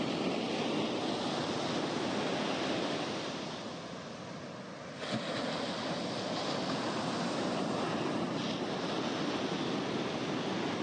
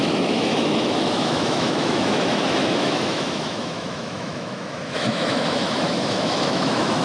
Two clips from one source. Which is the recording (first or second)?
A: first